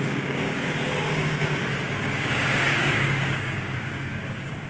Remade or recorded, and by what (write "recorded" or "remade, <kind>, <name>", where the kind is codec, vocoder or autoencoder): remade, codec, DAC